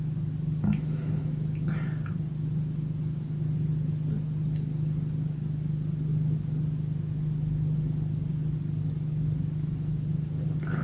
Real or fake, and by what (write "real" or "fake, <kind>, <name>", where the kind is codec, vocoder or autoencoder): real